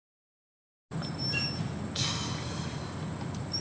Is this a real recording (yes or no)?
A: yes